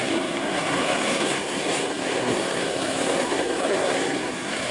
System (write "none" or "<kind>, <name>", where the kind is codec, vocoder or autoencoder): codec, SNAC